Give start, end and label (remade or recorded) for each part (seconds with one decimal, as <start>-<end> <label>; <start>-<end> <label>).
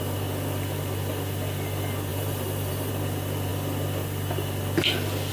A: 0.0-2.1 recorded; 2.1-2.9 remade; 2.9-5.3 recorded